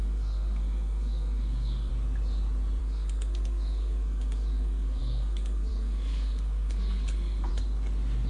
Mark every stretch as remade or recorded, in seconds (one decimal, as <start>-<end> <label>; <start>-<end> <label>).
0.0-1.9 remade; 1.9-2.8 recorded; 2.8-7.5 remade; 7.5-8.3 recorded